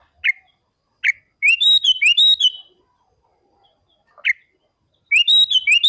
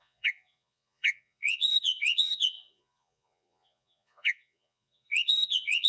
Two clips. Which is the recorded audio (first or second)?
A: first